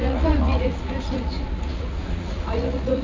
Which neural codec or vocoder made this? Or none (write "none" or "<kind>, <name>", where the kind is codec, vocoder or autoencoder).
vocoder, Vocos